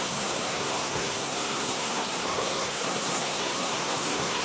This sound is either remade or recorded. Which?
remade